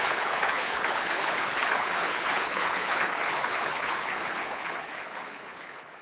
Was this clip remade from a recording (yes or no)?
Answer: yes